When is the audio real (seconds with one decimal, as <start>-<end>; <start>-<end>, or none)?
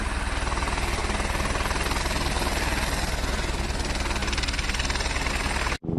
0.0-6.0